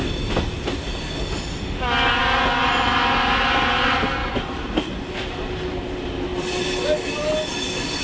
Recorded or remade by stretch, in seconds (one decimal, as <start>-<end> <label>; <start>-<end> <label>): 0.0-8.0 recorded